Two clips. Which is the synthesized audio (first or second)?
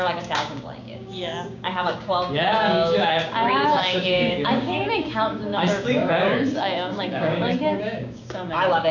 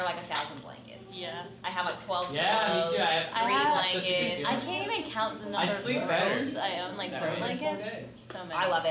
first